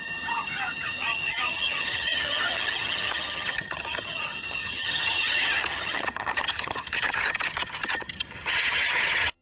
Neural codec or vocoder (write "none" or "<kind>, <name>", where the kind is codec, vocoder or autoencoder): vocoder, HiFi-GAN